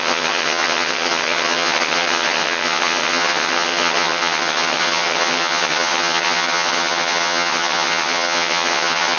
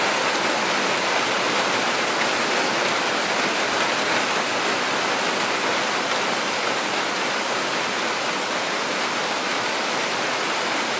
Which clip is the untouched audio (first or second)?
second